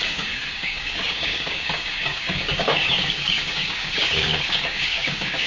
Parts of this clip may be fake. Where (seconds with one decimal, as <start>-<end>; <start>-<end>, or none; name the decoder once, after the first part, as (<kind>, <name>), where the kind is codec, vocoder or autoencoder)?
0.0-5.5 (codec, DAC)

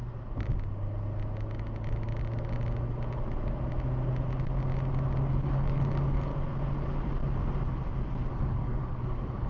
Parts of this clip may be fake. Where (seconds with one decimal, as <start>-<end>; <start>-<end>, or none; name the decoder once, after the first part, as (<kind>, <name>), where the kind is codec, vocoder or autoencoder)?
5.3-6.3 (codec, DAC); 8.3-9.5

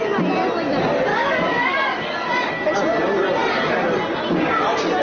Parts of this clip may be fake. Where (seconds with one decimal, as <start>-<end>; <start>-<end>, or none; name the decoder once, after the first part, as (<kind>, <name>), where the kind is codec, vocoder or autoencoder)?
1.1-2.5 (codec, DAC)

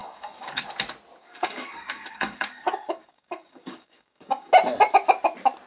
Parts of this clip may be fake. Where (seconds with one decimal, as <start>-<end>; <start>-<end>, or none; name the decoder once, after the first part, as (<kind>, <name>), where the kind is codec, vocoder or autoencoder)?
0.0-0.6 (codec, DAC); 1.2-4.5

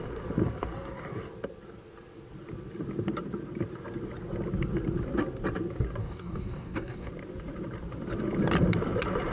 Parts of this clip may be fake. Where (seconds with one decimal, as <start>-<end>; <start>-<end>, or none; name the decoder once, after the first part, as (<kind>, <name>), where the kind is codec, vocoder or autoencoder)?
6.0-7.1 (codec, DAC)

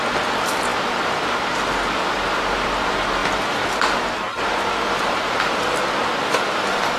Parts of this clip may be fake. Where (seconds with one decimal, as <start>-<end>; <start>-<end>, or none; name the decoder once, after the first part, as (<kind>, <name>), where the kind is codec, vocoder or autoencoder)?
none